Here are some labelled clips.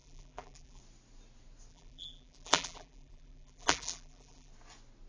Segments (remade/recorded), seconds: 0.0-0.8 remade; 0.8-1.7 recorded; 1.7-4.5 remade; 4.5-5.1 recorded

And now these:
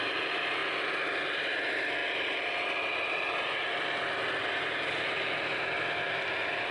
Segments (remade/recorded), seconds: 0.0-6.7 recorded